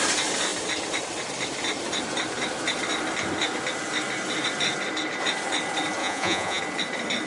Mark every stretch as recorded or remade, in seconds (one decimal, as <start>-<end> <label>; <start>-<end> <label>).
0.0-6.0 recorded; 6.0-6.6 remade; 6.6-7.3 recorded